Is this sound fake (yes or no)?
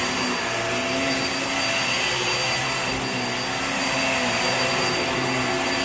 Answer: no